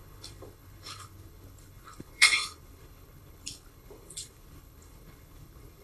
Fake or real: fake